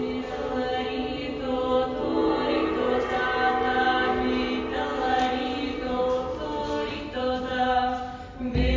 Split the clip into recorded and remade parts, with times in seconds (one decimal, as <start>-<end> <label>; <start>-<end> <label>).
0.0-8.8 recorded

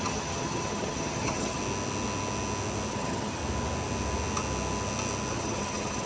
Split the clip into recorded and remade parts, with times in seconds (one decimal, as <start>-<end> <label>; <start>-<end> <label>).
0.0-1.6 remade; 1.6-2.9 recorded; 2.9-3.4 remade; 3.4-5.3 recorded; 5.3-6.1 remade